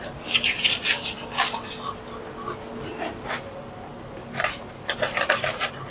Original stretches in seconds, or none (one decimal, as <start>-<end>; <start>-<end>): 0.0-5.9